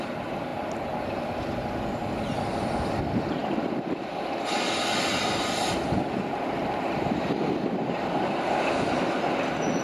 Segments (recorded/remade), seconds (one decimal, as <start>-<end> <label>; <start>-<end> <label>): 0.0-9.8 recorded